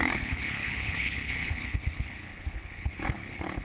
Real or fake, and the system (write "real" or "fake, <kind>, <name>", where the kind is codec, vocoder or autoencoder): fake, codec, HILCodec